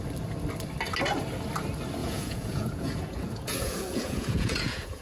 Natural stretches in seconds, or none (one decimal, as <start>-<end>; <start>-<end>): 0.0-2.0